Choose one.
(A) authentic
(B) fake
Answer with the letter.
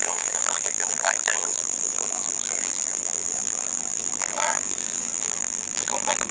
B